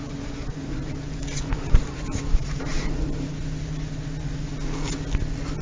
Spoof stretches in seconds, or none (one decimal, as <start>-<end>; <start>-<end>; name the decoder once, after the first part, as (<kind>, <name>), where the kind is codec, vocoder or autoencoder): 0.0-3.4 (vocoder, BigVGAN v2)